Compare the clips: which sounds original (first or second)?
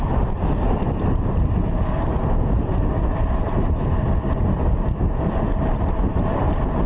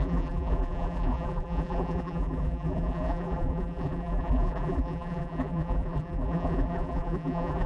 first